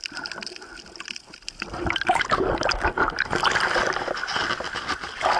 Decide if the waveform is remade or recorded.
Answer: recorded